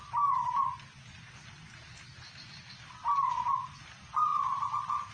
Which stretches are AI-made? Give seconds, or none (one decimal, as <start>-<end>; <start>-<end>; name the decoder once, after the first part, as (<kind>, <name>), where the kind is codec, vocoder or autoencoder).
none